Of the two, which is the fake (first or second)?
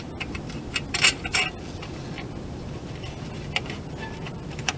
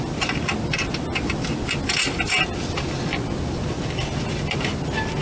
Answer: first